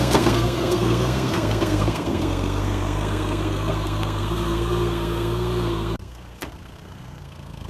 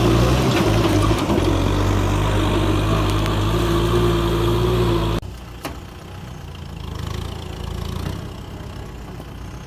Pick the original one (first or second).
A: second